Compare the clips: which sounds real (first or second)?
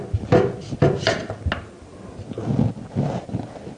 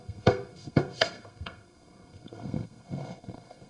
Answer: first